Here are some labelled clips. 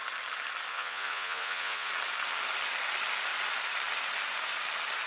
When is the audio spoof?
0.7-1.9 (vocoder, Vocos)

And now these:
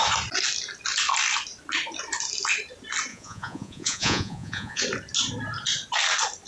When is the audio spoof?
3.1-4.8 (vocoder, Vocos)